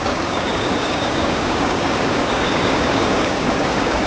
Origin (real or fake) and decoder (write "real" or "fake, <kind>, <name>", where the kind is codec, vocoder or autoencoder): fake, codec, DAC